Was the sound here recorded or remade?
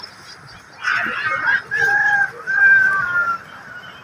recorded